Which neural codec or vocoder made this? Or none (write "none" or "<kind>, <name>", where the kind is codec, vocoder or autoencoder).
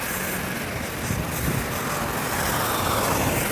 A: none